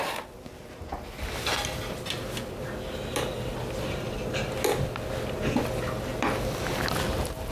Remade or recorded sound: recorded